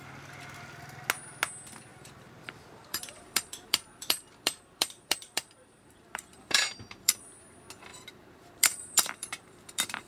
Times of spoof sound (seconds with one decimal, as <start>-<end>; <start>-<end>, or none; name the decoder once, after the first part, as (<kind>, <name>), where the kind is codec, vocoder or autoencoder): 1.9-7.2 (vocoder, BigVGAN v2); 7.9-10.1